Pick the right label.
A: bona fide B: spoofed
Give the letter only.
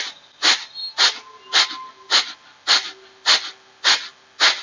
A